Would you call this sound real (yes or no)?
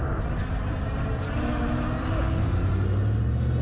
yes